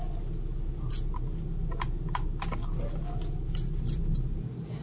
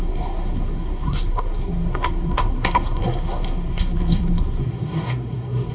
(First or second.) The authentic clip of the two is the first